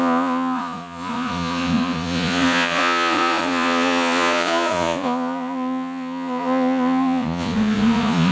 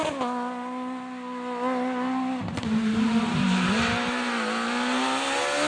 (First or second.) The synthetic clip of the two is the first